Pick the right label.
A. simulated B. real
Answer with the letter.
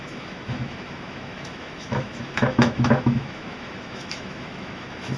A